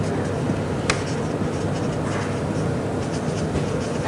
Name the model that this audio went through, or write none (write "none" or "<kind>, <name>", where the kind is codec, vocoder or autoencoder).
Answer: none